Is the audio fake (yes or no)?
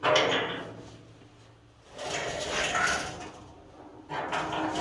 no